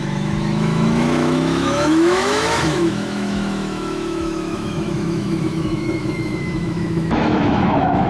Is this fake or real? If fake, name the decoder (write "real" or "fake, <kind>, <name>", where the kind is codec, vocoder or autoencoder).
fake, autoencoder, DAC-VAE